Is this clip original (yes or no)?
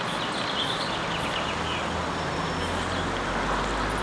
yes